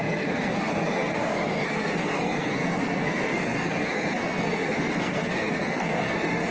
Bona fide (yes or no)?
no